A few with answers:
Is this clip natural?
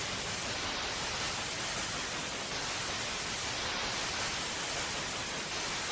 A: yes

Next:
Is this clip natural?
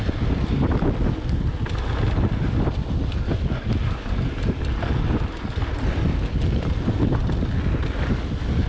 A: yes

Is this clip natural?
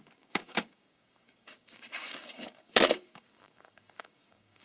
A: no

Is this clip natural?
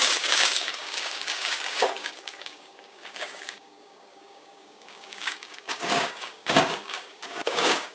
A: no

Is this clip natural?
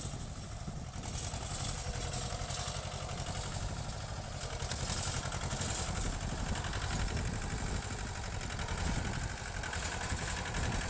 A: yes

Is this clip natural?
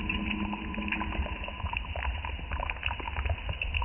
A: yes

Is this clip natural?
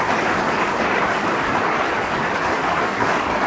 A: no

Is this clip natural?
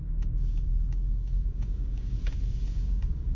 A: no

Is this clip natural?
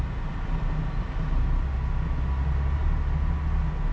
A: yes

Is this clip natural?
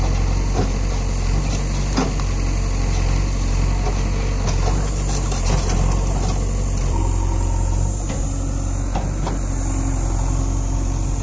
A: yes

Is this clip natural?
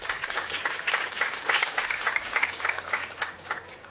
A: no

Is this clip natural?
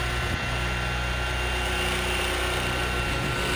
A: yes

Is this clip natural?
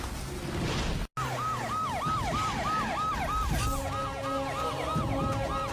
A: yes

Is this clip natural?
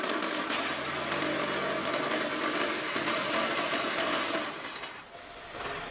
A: yes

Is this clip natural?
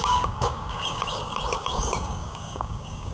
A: no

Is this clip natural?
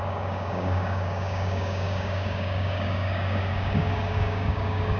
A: no